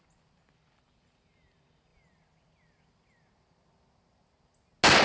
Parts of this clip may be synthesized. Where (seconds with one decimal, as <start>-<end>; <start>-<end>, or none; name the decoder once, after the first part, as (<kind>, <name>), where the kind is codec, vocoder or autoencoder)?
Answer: none